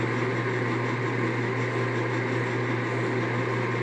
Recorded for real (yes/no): yes